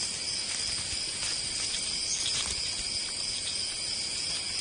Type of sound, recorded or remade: recorded